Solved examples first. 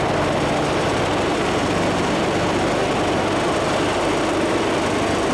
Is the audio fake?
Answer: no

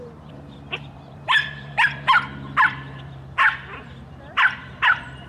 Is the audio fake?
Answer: yes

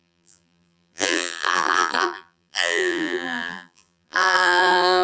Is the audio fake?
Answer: yes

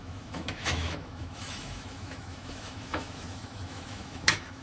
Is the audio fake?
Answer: yes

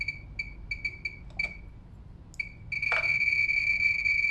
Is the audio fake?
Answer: no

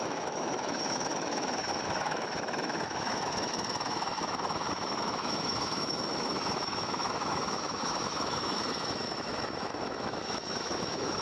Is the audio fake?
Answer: yes